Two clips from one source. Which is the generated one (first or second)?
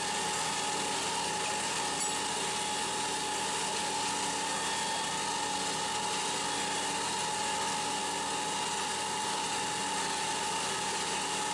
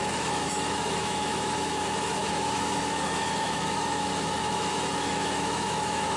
second